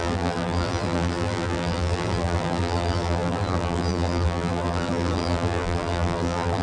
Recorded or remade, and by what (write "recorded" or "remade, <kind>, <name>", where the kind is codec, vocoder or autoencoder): remade, vocoder, BigVGAN v2